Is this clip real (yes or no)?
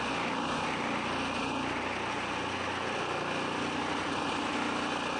yes